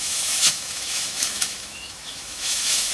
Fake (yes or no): yes